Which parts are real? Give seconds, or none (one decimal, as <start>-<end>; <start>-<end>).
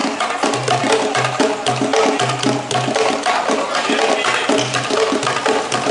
0.0-5.9